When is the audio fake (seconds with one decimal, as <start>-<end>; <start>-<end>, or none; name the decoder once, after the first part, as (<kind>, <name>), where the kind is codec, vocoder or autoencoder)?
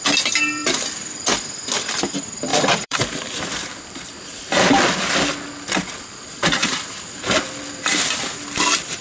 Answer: 0.6-1.4 (vocoder, BigVGAN v2); 2.5-5.2